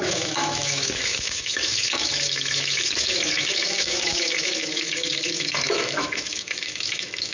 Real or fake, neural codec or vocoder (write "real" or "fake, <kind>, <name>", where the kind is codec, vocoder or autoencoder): fake, autoencoder, DAC-VAE